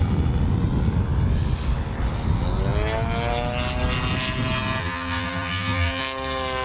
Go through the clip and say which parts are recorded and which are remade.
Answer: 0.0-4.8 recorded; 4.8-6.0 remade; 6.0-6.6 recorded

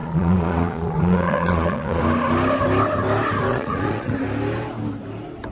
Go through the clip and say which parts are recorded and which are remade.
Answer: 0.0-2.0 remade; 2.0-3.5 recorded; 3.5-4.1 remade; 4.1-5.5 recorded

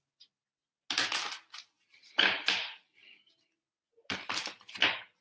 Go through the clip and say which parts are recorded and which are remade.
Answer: 0.0-5.2 recorded

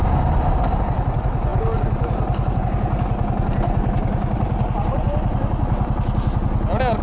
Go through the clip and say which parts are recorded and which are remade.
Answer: 0.0-7.0 recorded

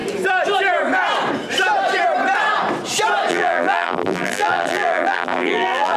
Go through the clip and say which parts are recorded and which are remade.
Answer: 0.0-3.3 recorded; 3.3-6.0 remade